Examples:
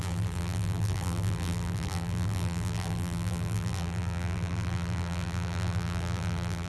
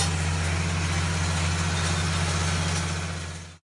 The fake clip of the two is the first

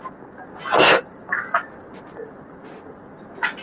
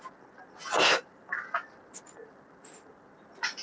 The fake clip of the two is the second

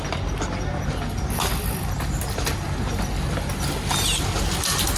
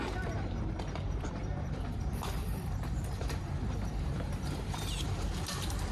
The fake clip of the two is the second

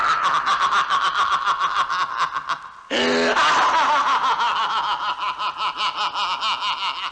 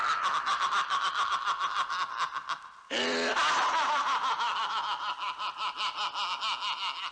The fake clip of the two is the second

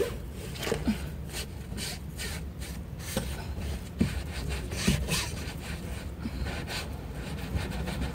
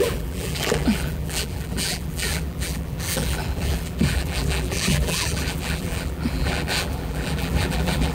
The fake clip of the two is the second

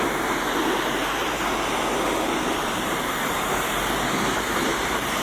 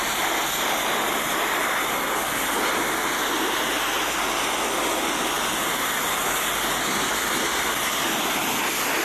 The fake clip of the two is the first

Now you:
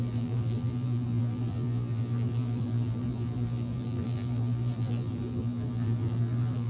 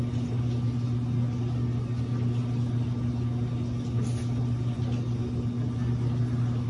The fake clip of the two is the first